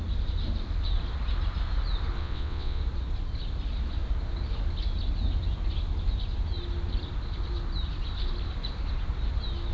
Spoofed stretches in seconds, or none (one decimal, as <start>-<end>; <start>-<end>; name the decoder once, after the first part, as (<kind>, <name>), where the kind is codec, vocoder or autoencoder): 2.2-2.8 (vocoder, WaveNeXt)